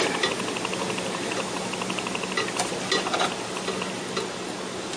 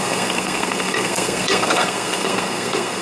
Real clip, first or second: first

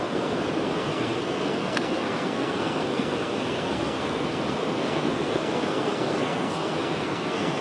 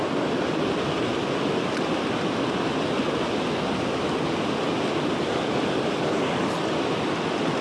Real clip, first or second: second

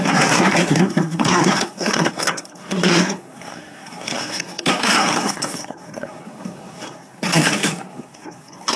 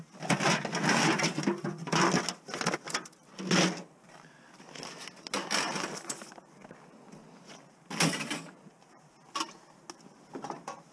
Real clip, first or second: second